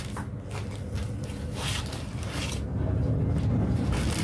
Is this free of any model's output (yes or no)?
yes